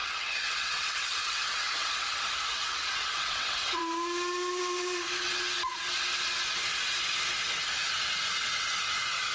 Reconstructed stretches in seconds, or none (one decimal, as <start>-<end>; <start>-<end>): 0.0-1.9; 2.5-3.8